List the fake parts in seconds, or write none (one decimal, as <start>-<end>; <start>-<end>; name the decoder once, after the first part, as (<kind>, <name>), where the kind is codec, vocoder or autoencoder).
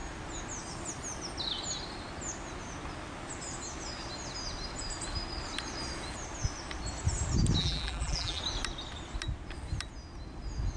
7.6-8.4 (vocoder, BigVGAN v2)